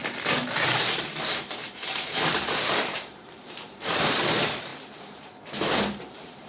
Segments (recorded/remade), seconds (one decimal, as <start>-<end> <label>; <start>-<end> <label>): 0.0-0.8 recorded; 0.8-4.7 remade; 4.7-6.0 recorded; 6.0-6.5 remade